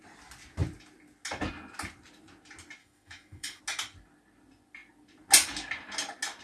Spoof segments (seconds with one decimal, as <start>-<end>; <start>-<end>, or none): 2.8-3.6

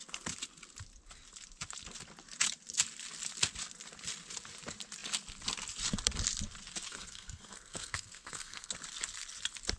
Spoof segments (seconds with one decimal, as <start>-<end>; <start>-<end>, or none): 6.9-8.7

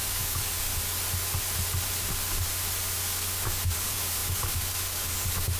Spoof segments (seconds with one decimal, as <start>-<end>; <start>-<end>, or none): 0.0-0.7; 3.0-5.6

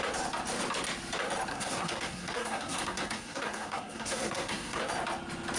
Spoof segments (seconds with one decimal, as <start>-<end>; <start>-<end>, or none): 1.5-4.8